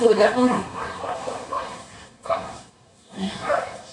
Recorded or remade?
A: remade